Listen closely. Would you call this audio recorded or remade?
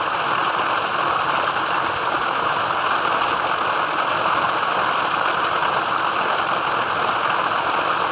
recorded